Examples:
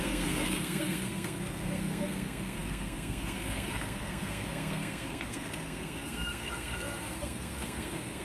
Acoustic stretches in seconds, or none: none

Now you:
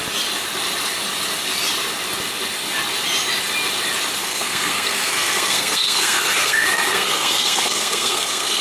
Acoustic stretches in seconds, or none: 0.0-4.2

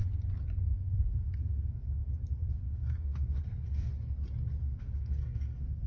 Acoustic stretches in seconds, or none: 0.0-0.7; 2.0-2.5; 3.9-4.6

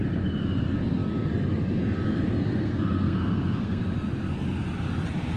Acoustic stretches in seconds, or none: 0.0-2.4; 3.8-5.4

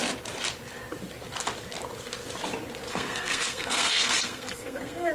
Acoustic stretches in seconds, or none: 0.0-2.9

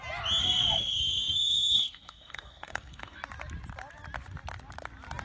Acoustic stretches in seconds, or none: 0.0-0.4; 3.2-5.2

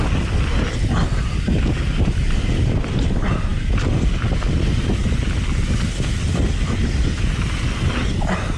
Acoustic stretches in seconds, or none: 0.0-8.6

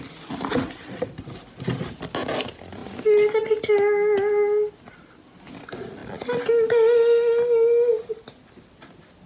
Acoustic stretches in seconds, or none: 0.0-9.3